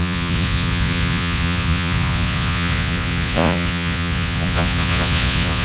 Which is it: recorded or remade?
remade